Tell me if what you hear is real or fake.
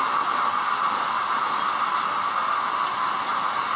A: real